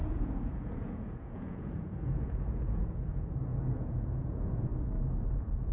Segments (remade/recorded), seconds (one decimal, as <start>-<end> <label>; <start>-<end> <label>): 0.0-4.7 remade; 4.7-5.3 recorded; 5.3-5.7 remade

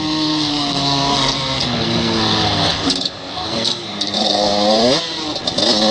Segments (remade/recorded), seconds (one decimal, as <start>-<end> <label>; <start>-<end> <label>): 0.0-4.8 remade; 4.8-5.9 recorded